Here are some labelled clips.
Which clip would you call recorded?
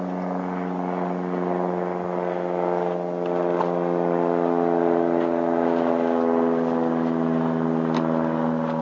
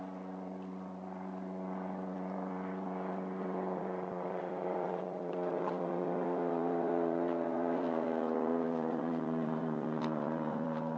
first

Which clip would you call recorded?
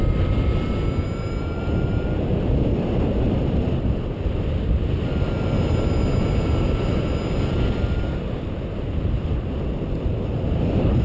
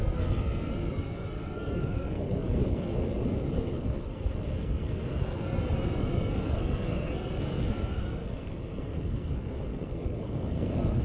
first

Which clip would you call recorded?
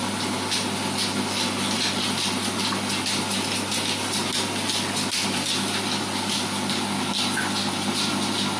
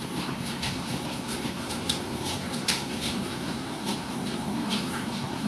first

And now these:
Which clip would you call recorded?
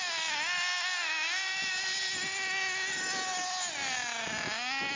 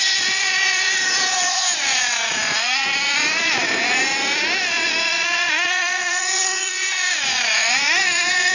first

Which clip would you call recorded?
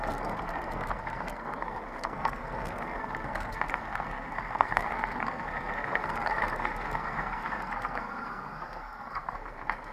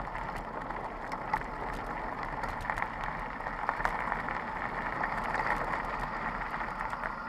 second